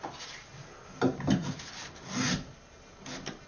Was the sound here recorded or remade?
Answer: recorded